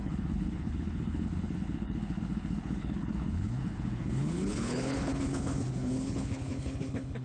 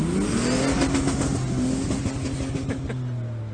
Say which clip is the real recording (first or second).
second